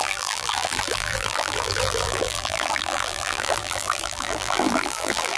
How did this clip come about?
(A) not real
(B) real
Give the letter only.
A